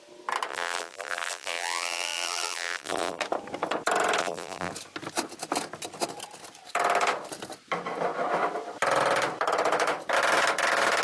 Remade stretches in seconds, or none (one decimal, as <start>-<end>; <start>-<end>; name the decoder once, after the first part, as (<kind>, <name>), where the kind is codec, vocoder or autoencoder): 0.5-3.2 (vocoder, BigVGAN v2); 4.2-4.7